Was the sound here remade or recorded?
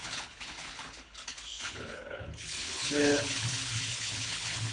remade